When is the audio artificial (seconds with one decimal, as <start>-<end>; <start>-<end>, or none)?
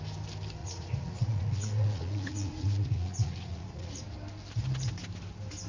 0.6-4.0